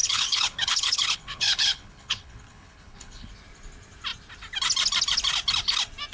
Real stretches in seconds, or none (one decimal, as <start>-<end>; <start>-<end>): 3.3-6.1

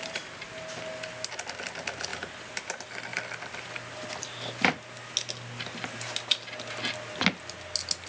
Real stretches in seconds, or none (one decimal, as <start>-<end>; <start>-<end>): 0.0-2.1; 2.6-3.1; 4.1-8.1

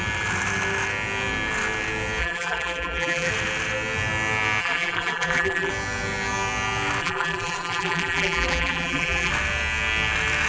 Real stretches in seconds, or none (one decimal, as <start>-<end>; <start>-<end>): 0.0-2.2; 3.3-4.6; 5.7-7.0; 9.3-10.5